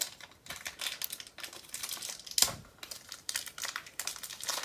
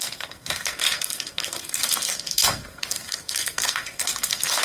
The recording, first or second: first